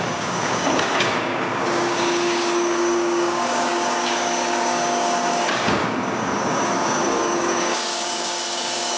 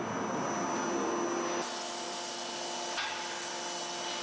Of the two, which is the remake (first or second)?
first